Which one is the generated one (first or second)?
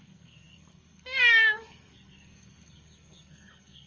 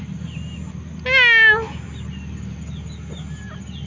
first